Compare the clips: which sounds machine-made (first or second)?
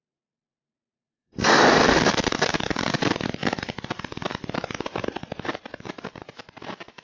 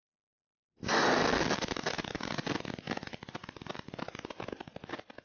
first